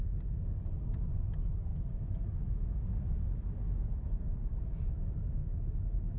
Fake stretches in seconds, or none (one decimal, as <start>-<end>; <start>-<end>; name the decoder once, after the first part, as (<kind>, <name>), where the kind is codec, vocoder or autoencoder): 1.7-2.8 (autoencoder, DAC-VAE); 5.4-6.2